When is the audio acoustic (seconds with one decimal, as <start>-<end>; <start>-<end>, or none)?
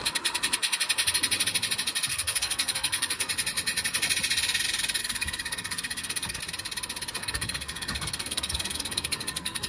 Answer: 0.0-2.1; 3.3-5.0; 6.4-7.2